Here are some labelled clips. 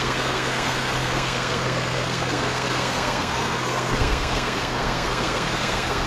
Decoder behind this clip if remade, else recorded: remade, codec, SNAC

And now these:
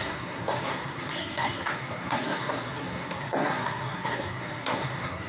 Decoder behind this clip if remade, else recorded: remade, codec, SNAC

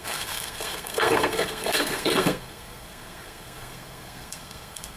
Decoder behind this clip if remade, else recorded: remade, codec, SNAC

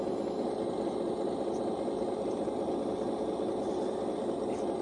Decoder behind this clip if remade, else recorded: recorded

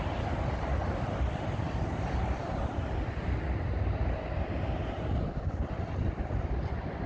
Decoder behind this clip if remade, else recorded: recorded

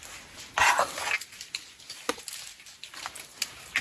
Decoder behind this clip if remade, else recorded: recorded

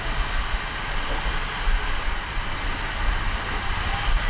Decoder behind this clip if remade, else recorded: recorded